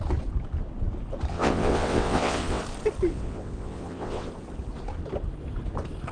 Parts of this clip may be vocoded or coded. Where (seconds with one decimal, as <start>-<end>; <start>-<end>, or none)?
1.3-2.6; 3.1-4.3